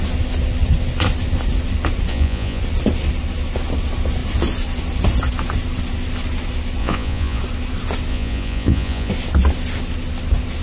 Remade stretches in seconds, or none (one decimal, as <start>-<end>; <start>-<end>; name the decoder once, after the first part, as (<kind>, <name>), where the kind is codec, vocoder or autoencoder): 2.1-2.6 (vocoder, Vocos); 6.8-7.4; 8.1-9.1